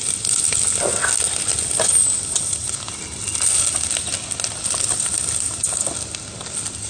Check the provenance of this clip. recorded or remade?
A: recorded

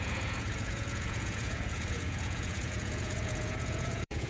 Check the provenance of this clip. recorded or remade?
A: remade